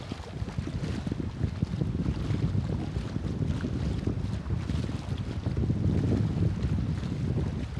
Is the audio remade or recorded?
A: recorded